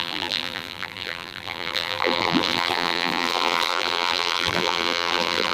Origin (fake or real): fake